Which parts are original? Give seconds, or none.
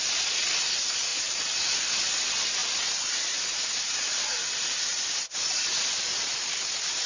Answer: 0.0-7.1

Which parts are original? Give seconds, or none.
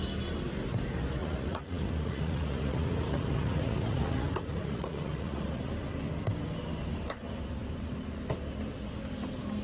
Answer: 0.0-1.2; 5.7-9.6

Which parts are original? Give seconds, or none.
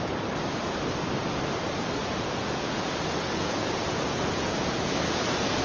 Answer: 0.0-2.0